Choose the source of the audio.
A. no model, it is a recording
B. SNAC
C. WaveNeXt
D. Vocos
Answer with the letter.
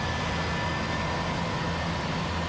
A